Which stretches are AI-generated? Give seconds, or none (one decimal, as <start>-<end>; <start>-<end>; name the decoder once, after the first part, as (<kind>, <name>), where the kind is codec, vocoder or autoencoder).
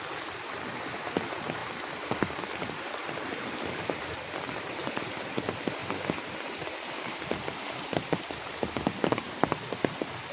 0.0-5.8 (vocoder, BigVGAN v2); 8.9-10.3